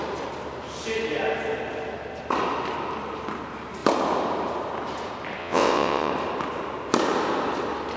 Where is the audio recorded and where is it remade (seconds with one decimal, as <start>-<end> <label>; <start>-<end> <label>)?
0.0-5.4 recorded; 5.4-6.1 remade; 6.1-8.0 recorded